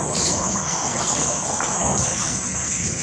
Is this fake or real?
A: fake